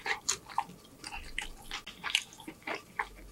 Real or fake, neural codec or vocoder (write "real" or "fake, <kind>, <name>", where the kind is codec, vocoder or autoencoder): real